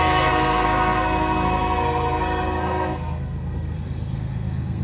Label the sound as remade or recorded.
remade